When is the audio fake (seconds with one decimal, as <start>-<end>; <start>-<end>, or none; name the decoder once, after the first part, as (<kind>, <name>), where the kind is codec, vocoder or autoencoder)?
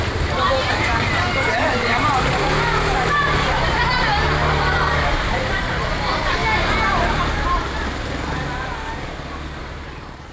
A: 0.0-6.4 (vocoder, BigVGAN v2); 9.6-10.3